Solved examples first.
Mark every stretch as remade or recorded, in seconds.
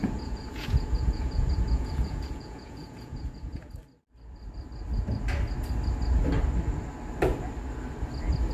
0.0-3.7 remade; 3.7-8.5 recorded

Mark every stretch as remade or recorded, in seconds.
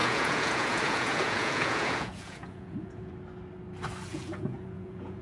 0.0-3.1 remade; 3.1-4.1 recorded; 4.1-5.2 remade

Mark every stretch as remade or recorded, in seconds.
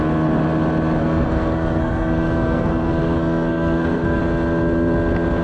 0.0-1.0 recorded; 1.0-4.2 remade; 4.2-5.4 recorded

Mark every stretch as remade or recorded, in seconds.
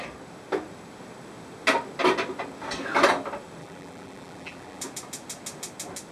0.0-3.6 recorded; 3.6-4.8 remade; 4.8-6.1 recorded